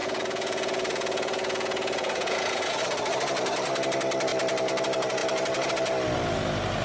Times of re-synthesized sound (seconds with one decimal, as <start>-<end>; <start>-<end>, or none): 0.0-2.8